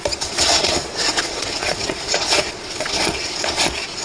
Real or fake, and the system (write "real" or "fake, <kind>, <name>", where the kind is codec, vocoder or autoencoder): fake, vocoder, Vocos